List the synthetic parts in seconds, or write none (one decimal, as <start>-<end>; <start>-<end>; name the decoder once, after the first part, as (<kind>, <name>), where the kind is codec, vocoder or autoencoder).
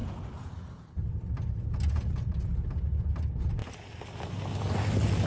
0.0-0.9 (vocoder, Vocos)